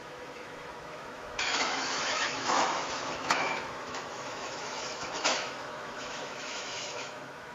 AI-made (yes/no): yes